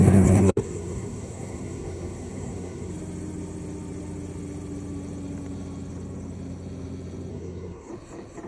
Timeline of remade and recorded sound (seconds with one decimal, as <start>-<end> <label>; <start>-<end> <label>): 0.0-2.9 remade; 2.9-7.3 recorded; 7.3-7.9 remade; 7.9-8.5 recorded